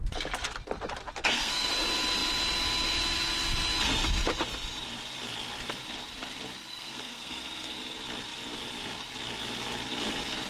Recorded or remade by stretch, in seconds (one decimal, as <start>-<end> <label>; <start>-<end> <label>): 0.0-1.2 recorded; 1.2-1.7 remade; 1.7-6.7 recorded; 6.7-7.8 remade; 7.8-10.5 recorded